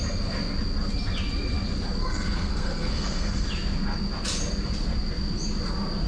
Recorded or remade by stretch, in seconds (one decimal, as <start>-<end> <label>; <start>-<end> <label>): 0.0-2.0 recorded; 2.0-3.5 remade; 3.5-6.1 recorded